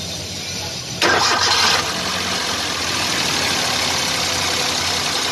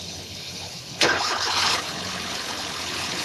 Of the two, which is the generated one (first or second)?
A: second